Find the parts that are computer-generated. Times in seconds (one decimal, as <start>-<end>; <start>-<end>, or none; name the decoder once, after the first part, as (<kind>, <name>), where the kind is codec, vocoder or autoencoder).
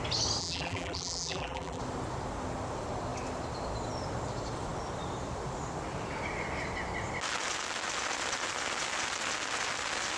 0.4-1.8 (vocoder, BigVGAN v2)